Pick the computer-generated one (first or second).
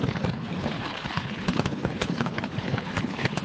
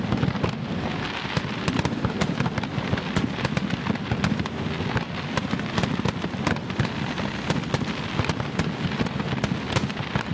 first